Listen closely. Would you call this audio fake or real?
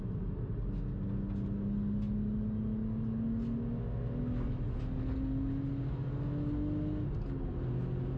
real